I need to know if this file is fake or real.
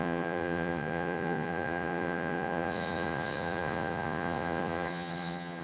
fake